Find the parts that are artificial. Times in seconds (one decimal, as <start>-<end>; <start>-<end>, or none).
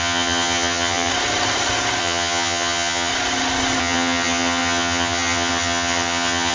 0.0-1.1; 2.0-3.1; 3.8-6.5